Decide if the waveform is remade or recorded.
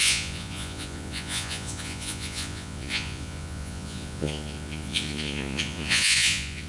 remade